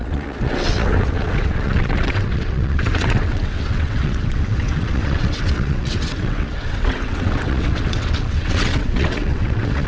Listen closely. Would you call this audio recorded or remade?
remade